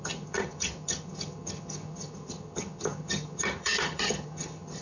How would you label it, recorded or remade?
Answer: remade